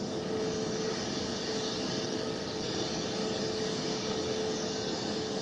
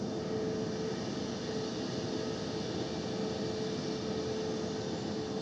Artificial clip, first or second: first